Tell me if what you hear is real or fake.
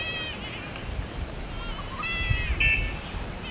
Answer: real